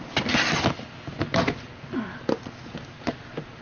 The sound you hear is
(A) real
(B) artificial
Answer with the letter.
A